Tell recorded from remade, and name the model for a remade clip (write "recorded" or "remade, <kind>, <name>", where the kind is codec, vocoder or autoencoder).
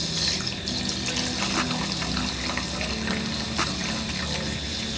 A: recorded